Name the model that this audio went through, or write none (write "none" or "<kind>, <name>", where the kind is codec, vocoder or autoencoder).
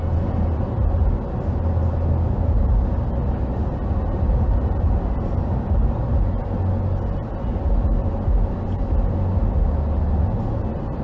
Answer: none